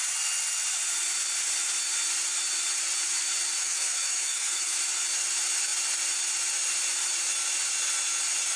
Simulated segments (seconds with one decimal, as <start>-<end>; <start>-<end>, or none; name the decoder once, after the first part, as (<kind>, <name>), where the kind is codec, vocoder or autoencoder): 3.6-4.8 (autoencoder, DAC-VAE)